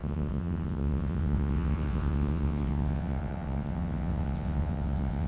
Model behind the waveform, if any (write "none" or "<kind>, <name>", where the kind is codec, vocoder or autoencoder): vocoder, WaveNeXt